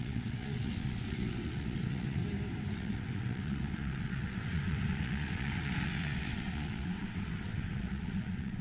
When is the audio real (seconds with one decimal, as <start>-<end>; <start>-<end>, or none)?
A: 2.2-2.7

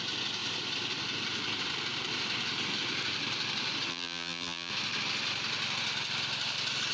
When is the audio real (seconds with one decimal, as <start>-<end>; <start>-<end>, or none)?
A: 0.0-3.9; 4.7-6.9

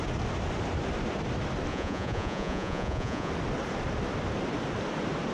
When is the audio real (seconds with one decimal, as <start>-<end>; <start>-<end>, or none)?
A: 0.0-1.7; 3.3-5.3